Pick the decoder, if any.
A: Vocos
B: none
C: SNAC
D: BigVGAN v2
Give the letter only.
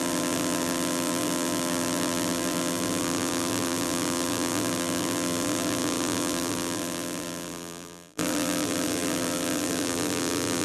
D